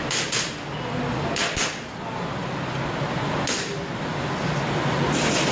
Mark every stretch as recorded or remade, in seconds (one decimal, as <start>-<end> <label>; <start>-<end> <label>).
0.0-5.5 recorded